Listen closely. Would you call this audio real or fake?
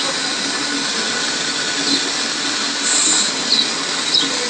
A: real